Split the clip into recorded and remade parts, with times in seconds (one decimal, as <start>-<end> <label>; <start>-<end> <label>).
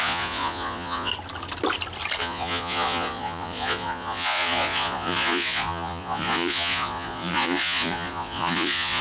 0.0-1.1 remade; 1.1-2.2 recorded; 2.2-9.0 remade